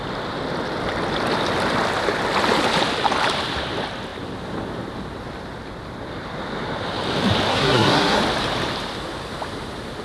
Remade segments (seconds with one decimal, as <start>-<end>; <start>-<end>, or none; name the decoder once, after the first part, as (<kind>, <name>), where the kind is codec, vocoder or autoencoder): 7.5-8.2 (codec, SNAC)